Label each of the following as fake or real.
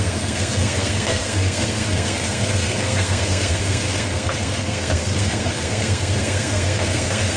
fake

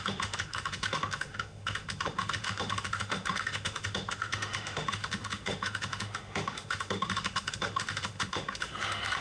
fake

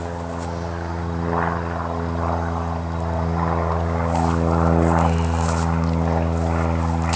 real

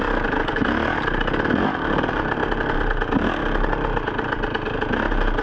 real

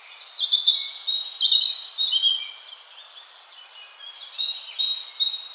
real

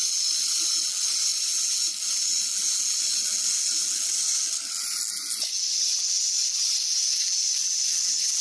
real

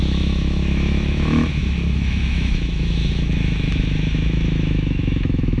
fake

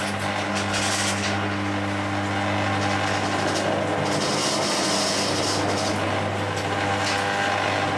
real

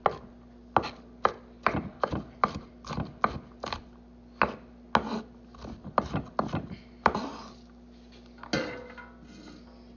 real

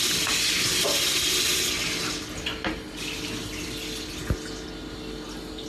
real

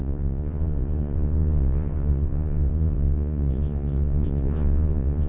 fake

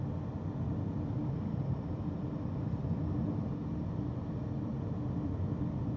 real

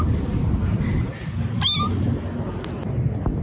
real